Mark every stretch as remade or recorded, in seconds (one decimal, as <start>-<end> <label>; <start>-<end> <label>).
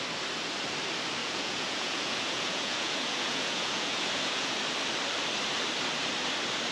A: 0.0-1.2 recorded; 1.2-4.5 remade; 4.5-6.7 recorded